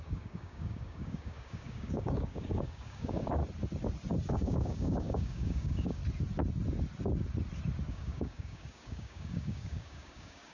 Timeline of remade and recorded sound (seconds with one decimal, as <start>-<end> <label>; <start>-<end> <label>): 0.0-3.4 remade; 3.4-4.3 recorded; 4.3-6.0 remade; 6.0-7.9 recorded; 7.9-10.5 remade